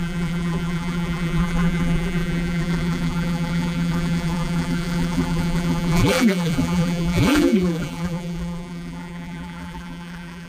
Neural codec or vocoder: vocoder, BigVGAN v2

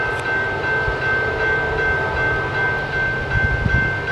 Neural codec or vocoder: none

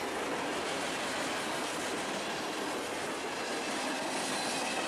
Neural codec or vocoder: none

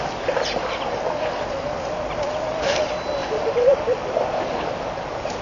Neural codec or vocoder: none